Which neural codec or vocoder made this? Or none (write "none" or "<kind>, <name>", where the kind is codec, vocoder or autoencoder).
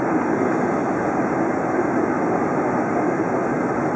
none